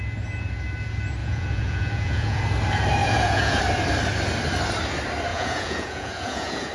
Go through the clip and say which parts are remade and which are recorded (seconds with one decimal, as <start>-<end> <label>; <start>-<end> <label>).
0.0-1.2 recorded; 1.2-2.4 remade; 2.4-3.0 recorded; 3.0-3.6 remade; 3.6-5.3 recorded; 5.3-6.7 remade

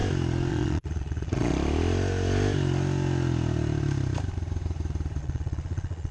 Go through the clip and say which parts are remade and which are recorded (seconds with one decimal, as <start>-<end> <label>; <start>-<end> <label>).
0.0-0.5 recorded; 0.5-1.5 remade; 1.5-5.2 recorded; 5.2-6.1 remade

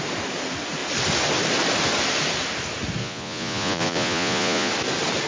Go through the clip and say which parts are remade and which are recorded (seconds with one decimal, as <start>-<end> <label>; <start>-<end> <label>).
0.0-3.0 recorded; 3.0-4.7 remade; 4.7-5.3 recorded

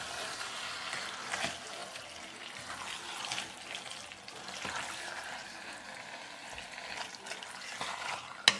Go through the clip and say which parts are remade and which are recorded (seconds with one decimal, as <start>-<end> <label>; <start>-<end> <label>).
0.0-8.6 recorded

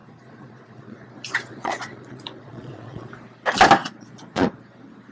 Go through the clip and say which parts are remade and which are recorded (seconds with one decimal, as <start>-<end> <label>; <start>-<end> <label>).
0.0-3.1 remade; 3.1-3.8 recorded; 3.8-4.6 remade; 4.6-5.1 recorded

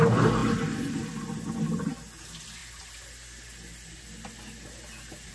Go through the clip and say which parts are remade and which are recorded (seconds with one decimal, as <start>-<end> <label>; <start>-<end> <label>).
0.0-5.3 recorded